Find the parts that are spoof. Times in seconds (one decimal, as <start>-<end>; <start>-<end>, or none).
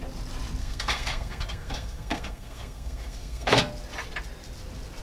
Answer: 0.6-3.6